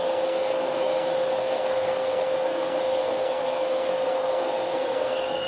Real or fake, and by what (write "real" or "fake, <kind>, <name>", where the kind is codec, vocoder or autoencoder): fake, codec, SNAC